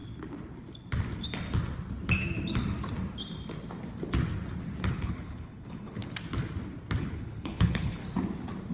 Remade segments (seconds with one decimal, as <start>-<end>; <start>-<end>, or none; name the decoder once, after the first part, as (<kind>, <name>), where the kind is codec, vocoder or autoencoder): 4.9-6.0 (codec, HILCodec); 7.0-8.0